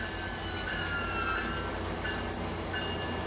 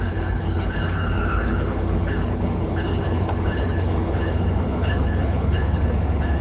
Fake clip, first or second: second